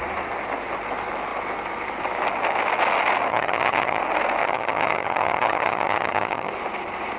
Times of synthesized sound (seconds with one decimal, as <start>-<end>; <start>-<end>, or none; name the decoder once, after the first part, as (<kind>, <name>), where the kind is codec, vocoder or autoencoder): 3.3-4.0 (vocoder, HiFi-GAN); 4.4-6.5

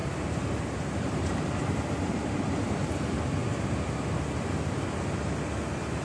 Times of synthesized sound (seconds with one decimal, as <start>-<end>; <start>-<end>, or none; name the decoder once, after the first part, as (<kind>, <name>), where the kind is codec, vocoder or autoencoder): 0.0-3.0 (vocoder, BigVGAN v2)

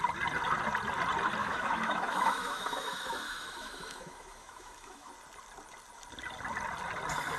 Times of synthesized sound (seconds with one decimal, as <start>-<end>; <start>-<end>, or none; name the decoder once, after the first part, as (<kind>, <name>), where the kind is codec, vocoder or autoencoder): 1.4-5.1 (autoencoder, DAC-VAE)

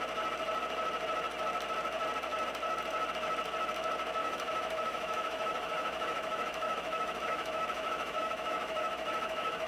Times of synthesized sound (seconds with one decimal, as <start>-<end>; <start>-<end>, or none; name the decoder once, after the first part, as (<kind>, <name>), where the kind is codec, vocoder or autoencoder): 4.2-9.7 (autoencoder, DAC-VAE)

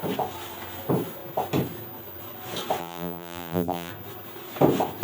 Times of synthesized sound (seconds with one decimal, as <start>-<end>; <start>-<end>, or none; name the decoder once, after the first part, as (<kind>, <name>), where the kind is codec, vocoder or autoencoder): 2.8-3.9 (vocoder, BigVGAN v2)

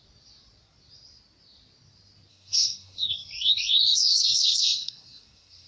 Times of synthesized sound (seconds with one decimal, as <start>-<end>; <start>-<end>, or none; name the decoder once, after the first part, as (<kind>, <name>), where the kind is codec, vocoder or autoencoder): 2.3-5.7 (codec, SNAC)

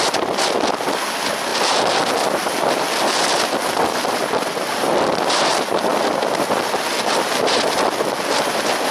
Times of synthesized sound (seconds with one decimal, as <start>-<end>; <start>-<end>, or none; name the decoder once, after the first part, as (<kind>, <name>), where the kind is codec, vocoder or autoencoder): none

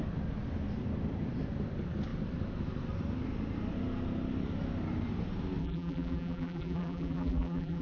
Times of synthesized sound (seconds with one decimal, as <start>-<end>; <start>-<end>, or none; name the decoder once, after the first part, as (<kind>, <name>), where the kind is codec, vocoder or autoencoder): 5.6-7.8 (vocoder, BigVGAN v2)